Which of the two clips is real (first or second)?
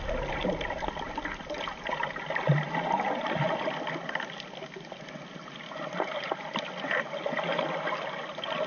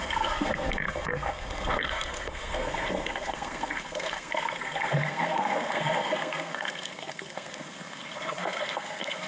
first